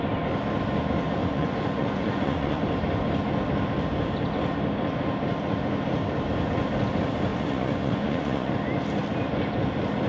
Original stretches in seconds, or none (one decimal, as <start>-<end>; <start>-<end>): 0.0-1.2; 2.6-7.3; 8.5-10.1